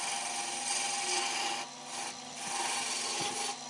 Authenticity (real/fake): real